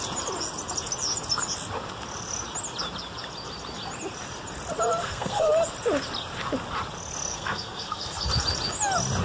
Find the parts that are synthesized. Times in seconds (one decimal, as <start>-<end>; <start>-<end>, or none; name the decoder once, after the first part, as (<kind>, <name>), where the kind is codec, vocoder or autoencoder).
5.0-5.5 (codec, SNAC); 7.3-8.3